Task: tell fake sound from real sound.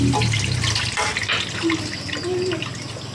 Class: real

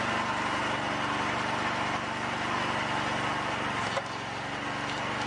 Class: real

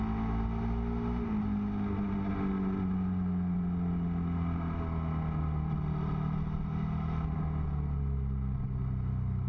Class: real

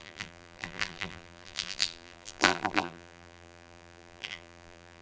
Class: fake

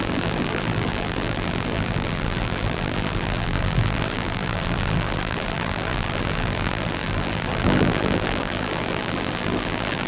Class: fake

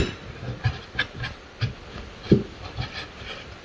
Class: real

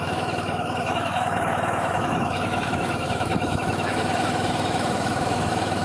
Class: fake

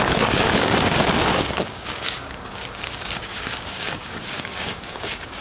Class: fake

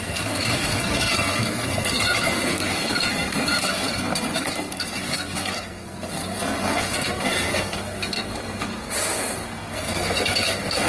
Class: fake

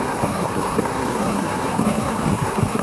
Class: fake